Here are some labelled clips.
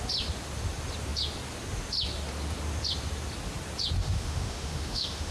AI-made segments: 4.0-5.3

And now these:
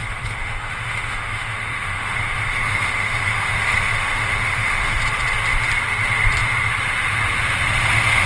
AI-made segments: 0.0-5.0

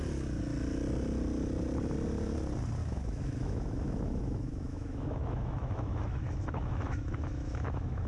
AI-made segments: 2.8-8.1

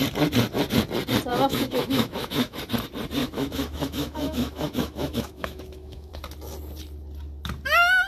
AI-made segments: 1.3-2.6; 3.2-6.1